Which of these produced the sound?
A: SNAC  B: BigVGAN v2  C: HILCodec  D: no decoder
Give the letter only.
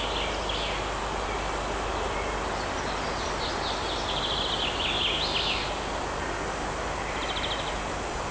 D